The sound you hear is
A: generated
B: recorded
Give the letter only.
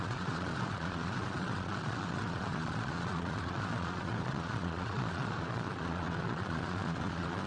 A